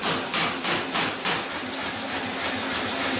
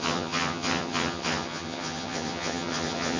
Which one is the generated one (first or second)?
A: second